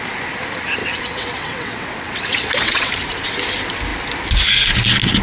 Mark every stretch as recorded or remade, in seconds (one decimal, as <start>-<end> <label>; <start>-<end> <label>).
0.0-0.8 recorded; 0.8-2.9 remade; 2.9-5.2 recorded